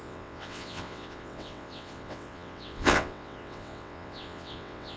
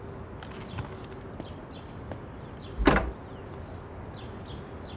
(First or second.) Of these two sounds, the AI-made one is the first